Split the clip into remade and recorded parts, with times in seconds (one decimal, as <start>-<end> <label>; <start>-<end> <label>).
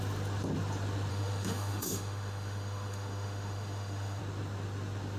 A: 0.0-1.1 recorded; 1.1-4.2 remade; 4.2-5.2 recorded